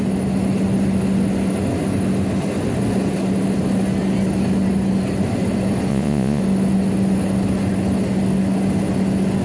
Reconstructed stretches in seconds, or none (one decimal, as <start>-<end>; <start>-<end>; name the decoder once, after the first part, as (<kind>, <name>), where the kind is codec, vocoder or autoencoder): 5.9-6.4 (vocoder, Vocos)